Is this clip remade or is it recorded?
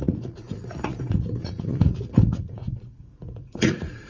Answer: remade